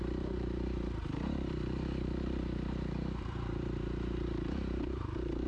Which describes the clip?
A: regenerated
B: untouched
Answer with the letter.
A